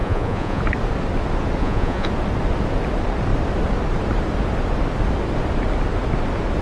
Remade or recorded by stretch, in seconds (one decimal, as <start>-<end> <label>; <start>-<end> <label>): 0.0-0.6 remade; 0.6-1.6 recorded; 1.6-2.1 remade; 2.1-6.6 recorded